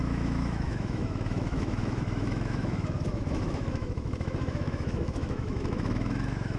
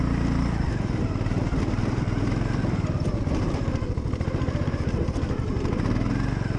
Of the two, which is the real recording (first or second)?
second